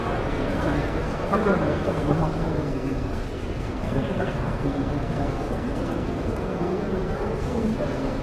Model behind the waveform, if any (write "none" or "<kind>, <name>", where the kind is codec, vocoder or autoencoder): codec, SNAC